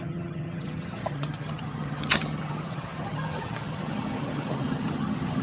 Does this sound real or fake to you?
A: fake